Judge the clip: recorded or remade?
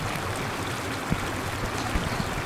recorded